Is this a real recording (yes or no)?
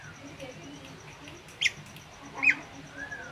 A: yes